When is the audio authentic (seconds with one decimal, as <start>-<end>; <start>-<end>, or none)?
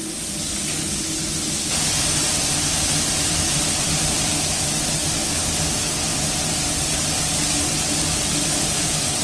0.0-1.6; 4.3-8.7